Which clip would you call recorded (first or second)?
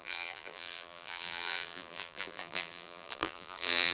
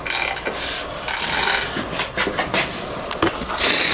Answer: second